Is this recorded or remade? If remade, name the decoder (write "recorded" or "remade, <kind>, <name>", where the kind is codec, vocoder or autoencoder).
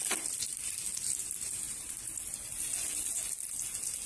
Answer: recorded